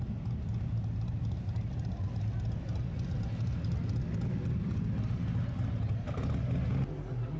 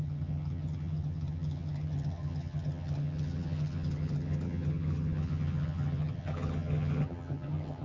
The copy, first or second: second